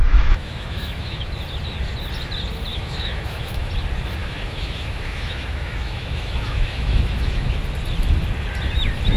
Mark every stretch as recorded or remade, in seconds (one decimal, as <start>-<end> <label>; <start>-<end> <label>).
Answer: 0.0-1.3 remade; 1.3-2.7 recorded; 2.7-3.7 remade; 3.7-4.2 recorded; 4.2-7.5 remade; 7.5-9.2 recorded